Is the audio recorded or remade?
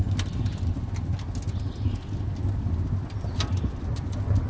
recorded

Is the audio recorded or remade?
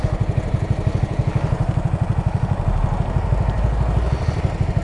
recorded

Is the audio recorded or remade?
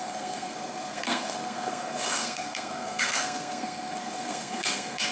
remade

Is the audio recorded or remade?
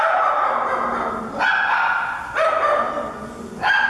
recorded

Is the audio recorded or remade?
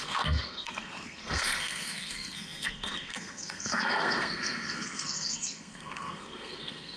remade